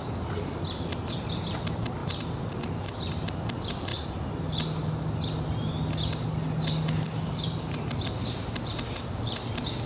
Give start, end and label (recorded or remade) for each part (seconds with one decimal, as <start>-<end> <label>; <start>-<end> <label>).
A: 0.0-9.9 recorded